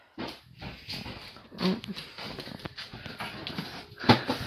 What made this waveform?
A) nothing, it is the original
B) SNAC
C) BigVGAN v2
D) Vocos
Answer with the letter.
A